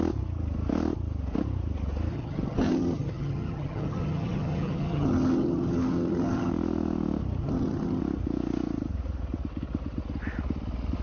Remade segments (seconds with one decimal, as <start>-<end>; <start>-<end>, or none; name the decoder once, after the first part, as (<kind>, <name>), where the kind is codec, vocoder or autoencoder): 2.1-6.5 (vocoder, HiFi-GAN); 7.4-8.0